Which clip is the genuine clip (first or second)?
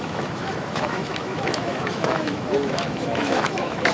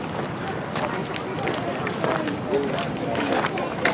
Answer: second